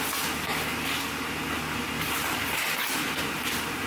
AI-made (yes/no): no